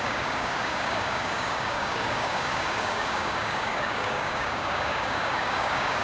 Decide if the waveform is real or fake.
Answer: fake